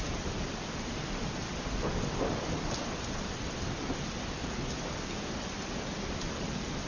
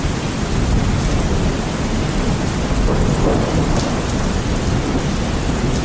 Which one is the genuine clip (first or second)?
second